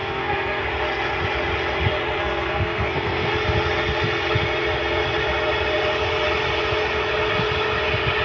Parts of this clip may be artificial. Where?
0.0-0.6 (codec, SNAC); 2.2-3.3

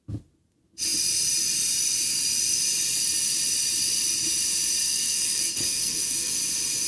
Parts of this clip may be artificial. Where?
4.8-6.3 (codec, SNAC)

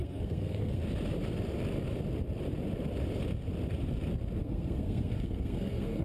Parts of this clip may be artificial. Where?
0.0-0.8 (codec, SNAC); 4.4-6.0

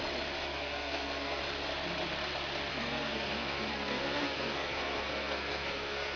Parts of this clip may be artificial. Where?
0.4-1.4 (codec, SNAC); 2.7-6.2

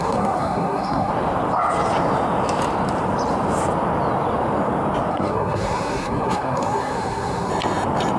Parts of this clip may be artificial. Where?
0.0-1.1 (codec, SNAC); 5.1-7.5

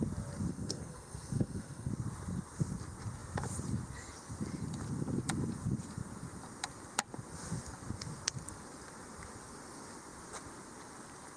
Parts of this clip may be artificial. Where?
0.5-1.9 (codec, SNAC)

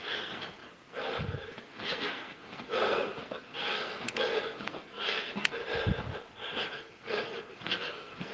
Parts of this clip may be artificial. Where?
0.0-5.6 (codec, SNAC); 6.7-8.3